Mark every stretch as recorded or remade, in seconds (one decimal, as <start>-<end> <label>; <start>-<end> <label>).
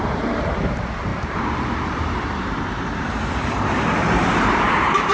0.0-5.1 remade